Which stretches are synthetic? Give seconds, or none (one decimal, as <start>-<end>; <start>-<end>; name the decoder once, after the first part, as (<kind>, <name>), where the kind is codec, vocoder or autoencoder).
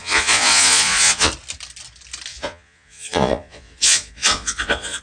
0.0-1.3 (vocoder, Vocos); 2.3-5.0